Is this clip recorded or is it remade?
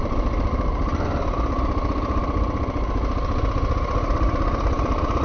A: recorded